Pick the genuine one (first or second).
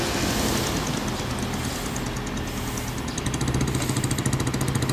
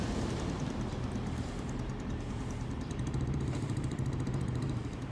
first